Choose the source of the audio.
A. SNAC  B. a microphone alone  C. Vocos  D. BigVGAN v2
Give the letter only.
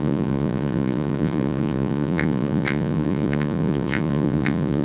C